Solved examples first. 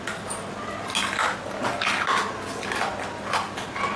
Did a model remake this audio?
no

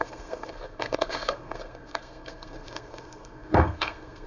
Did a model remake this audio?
yes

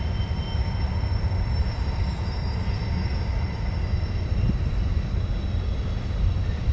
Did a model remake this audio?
no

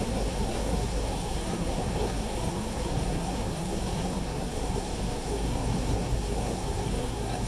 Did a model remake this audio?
yes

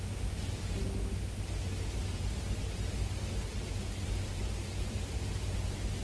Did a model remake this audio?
no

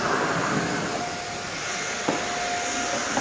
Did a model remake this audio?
no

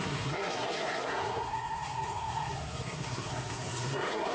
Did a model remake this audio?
yes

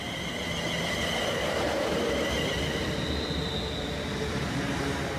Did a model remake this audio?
no